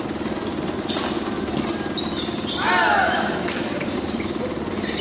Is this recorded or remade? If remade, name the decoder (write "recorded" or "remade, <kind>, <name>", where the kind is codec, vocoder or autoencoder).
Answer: recorded